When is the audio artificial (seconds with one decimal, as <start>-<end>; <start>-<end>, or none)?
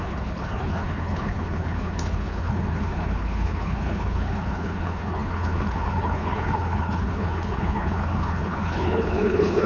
0.0-9.7